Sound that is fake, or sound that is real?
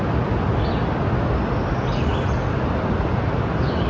real